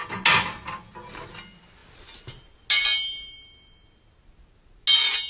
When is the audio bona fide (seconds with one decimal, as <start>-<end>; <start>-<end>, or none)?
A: 0.0-5.3

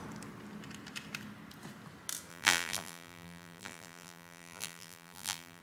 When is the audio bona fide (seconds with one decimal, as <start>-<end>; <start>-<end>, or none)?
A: 0.0-2.3

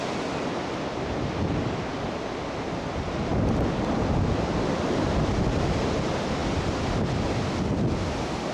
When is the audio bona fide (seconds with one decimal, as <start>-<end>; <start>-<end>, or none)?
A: 0.0-8.5

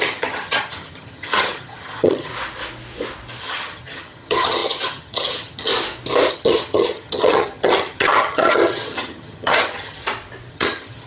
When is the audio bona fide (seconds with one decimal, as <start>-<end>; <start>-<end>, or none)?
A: 2.3-3.4; 5.7-6.3; 10.0-10.5

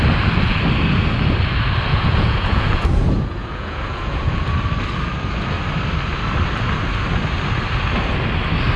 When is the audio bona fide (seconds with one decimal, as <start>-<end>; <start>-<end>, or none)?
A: 0.0-1.9; 4.5-8.8

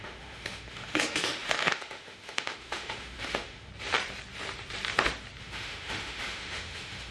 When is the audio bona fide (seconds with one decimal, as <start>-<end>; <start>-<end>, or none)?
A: 3.7-5.4

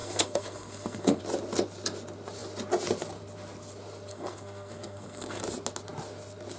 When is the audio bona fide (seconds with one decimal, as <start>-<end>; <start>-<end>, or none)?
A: 1.2-4.1; 5.4-6.6

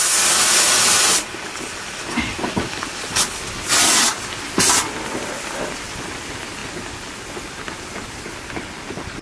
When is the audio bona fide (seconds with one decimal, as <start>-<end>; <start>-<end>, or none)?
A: 0.0-9.2